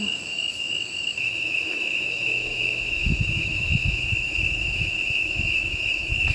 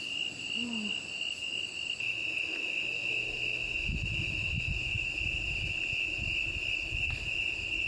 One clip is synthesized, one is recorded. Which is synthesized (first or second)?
first